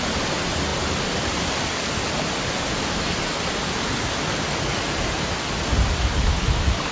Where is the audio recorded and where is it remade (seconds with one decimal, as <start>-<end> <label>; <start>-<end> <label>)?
0.0-6.9 recorded